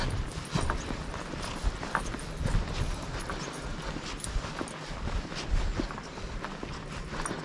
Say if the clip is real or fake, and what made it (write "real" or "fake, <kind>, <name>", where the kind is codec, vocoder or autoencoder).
real